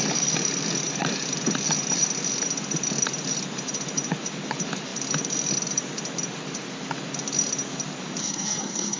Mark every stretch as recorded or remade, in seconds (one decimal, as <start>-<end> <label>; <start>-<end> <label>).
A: 0.0-8.2 recorded; 8.2-9.0 remade